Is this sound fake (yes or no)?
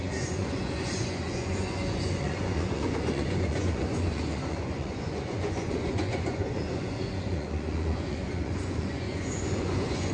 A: yes